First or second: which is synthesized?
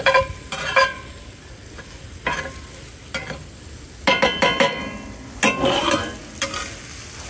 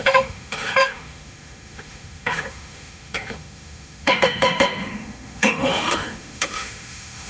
second